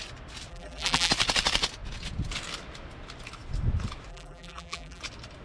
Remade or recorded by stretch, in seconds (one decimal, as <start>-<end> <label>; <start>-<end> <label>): 0.0-0.5 recorded; 0.5-1.1 remade; 1.1-4.1 recorded; 4.1-5.0 remade; 5.0-5.4 recorded